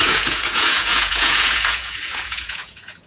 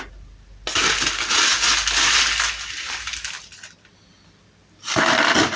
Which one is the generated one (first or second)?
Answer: first